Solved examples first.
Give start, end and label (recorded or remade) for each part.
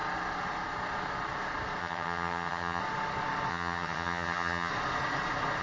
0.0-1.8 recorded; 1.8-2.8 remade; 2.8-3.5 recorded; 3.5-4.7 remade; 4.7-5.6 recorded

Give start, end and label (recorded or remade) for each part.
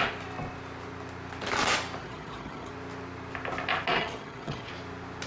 0.0-2.0 recorded; 2.0-2.7 remade; 2.7-4.0 recorded; 4.0-4.7 remade; 4.7-5.3 recorded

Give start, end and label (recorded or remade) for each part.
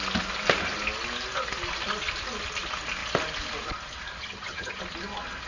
0.0-4.2 recorded; 4.2-4.8 remade; 4.8-5.5 recorded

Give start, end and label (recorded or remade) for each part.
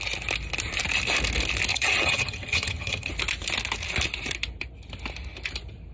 0.0-1.7 recorded; 1.7-3.1 remade; 3.1-5.9 recorded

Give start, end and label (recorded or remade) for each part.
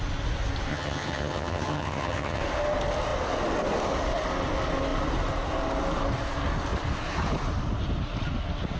0.0-0.7 recorded; 0.7-2.4 remade; 2.4-8.8 recorded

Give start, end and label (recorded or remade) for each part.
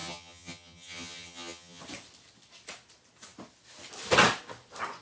0.0-1.8 remade; 1.8-5.0 recorded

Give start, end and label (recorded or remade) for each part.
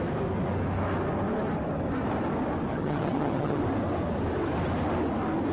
0.0-2.7 recorded; 2.7-3.6 remade; 3.6-5.5 recorded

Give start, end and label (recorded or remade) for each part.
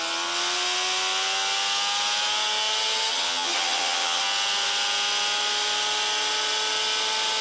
0.0-3.1 recorded; 3.1-4.2 remade; 4.2-7.4 recorded